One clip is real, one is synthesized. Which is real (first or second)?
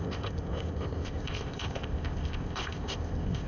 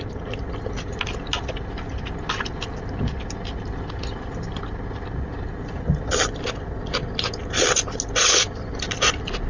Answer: second